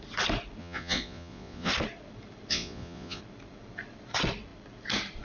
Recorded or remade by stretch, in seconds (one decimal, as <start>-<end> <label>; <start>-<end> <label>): 0.0-0.6 recorded; 0.6-1.7 remade; 1.7-2.5 recorded; 2.5-3.2 remade; 3.2-5.2 recorded